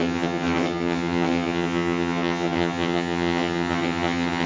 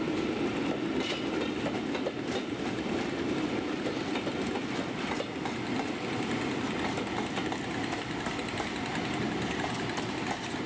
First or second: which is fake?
first